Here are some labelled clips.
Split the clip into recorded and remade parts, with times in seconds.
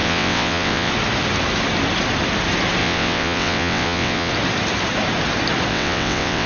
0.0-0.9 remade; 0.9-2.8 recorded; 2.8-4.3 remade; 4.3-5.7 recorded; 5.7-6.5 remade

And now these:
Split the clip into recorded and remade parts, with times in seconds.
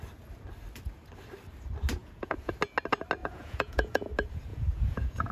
0.0-2.0 recorded; 2.0-2.5 remade; 2.5-3.2 recorded; 3.2-4.1 remade; 4.1-4.5 recorded; 4.5-5.3 remade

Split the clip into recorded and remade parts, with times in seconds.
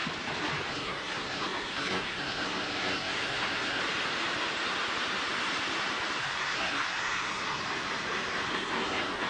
0.0-0.7 recorded; 0.7-3.8 remade; 3.8-6.2 recorded; 6.2-7.6 remade; 7.6-8.5 recorded; 8.5-9.3 remade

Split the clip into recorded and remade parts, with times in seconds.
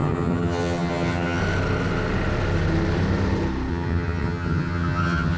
0.0-1.4 remade; 1.4-3.7 recorded; 3.7-5.4 remade